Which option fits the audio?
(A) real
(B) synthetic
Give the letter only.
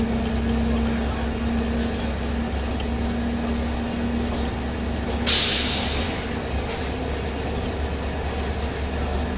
A